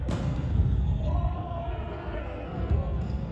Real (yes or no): no